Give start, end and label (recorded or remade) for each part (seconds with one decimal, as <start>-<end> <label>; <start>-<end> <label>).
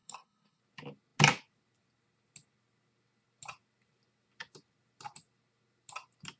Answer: 0.0-0.6 remade; 0.6-6.4 recorded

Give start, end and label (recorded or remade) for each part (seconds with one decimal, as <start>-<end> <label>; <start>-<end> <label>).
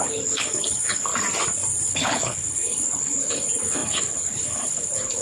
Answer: 0.0-1.1 remade; 1.1-1.9 recorded; 1.9-5.2 remade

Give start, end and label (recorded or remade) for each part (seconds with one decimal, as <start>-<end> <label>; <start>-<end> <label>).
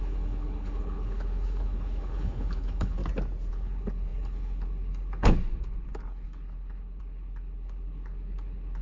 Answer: 0.0-3.0 remade; 3.0-3.5 recorded; 3.5-8.8 remade